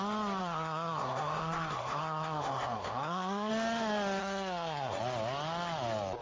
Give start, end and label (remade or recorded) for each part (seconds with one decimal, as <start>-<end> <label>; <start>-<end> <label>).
0.0-0.4 recorded; 0.4-3.5 remade; 3.5-4.2 recorded; 4.2-5.0 remade; 5.0-6.2 recorded